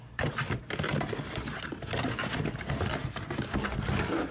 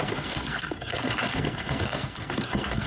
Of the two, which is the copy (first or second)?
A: second